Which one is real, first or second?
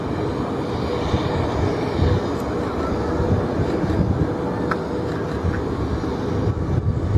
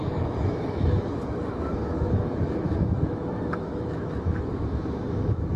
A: first